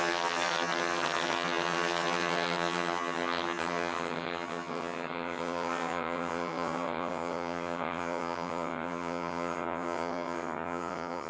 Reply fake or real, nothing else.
fake